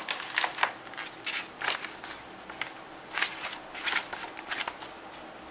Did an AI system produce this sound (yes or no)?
no